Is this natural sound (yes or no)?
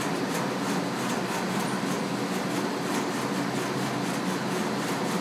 yes